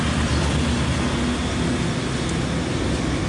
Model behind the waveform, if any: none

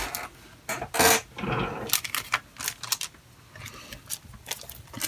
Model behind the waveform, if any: none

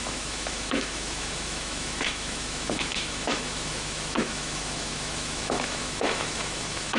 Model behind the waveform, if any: autoencoder, DAC-VAE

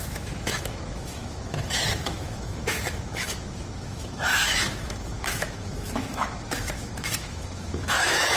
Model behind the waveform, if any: autoencoder, DAC-VAE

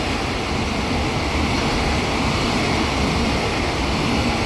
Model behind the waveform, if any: none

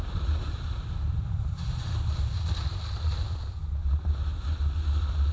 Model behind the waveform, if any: none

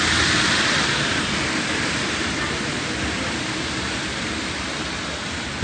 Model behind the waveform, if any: none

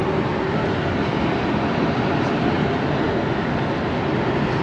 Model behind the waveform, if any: none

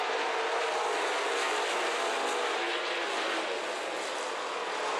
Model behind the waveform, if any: none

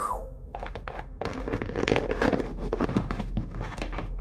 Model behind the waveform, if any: autoencoder, DAC-VAE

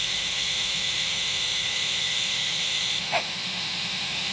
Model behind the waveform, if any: autoencoder, DAC-VAE